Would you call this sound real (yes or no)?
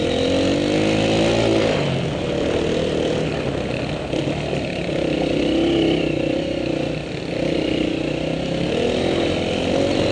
yes